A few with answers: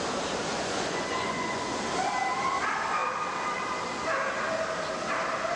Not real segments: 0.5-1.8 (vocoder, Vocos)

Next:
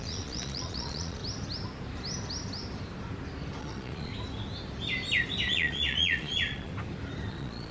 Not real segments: 0.0-1.2 (vocoder, Vocos); 3.6-4.1; 5.5-6.7; 7.3-7.7

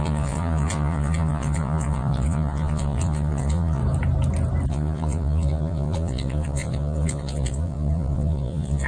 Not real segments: 0.0-3.8 (vocoder, Vocos); 4.7-8.9

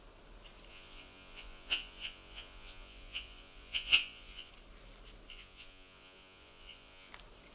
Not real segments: 0.7-4.5 (vocoder, Vocos); 5.3-7.1

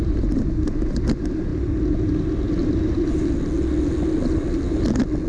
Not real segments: none

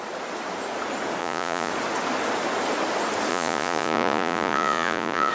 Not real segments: 1.2-1.7 (vocoder, Vocos); 3.3-5.3

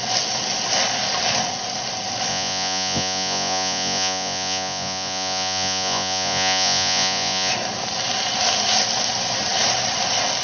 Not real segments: 2.3-7.5 (vocoder, Vocos)

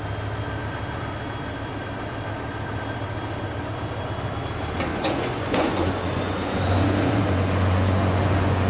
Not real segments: 4.9-8.7 (vocoder, Vocos)